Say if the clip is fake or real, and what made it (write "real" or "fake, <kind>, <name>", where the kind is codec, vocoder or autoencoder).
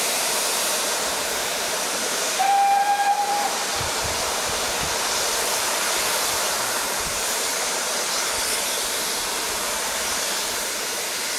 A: fake, vocoder, BigVGAN v2